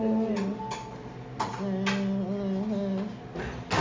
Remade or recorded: recorded